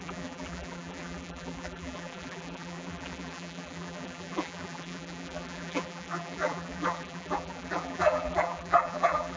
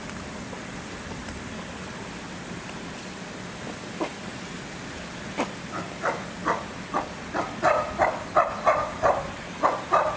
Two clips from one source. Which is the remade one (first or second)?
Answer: first